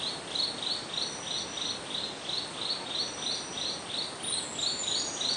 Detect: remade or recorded recorded